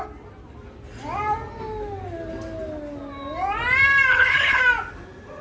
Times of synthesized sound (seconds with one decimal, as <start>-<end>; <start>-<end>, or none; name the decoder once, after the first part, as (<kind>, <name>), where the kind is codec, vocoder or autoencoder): 4.1-4.6 (codec, HILCodec)